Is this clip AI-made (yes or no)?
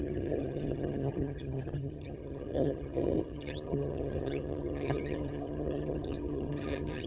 yes